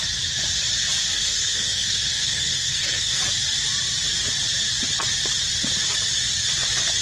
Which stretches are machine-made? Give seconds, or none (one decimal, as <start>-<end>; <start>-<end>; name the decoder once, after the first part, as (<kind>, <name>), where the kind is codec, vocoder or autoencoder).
1.1-3.2 (codec, SNAC)